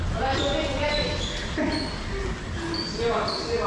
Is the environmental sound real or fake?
real